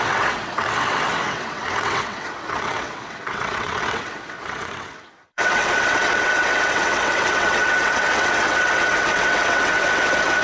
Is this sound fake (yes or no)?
yes